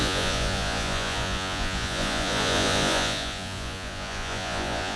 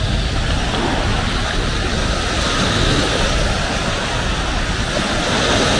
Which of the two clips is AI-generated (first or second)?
first